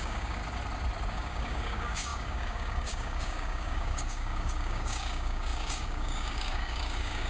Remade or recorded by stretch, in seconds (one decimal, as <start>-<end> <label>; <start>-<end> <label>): 0.0-0.4 remade; 0.4-1.1 recorded; 1.1-7.3 remade